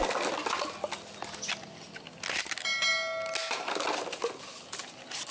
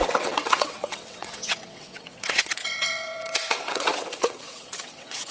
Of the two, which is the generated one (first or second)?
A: second